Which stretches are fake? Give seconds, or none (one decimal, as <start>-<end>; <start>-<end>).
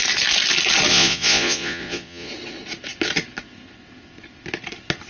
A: 0.9-2.3